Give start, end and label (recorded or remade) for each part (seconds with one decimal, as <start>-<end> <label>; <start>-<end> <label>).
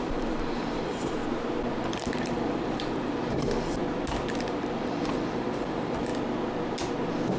0.0-1.2 remade; 1.2-1.7 recorded; 1.7-3.8 remade; 3.8-4.3 recorded; 4.3-6.1 remade; 6.1-7.4 recorded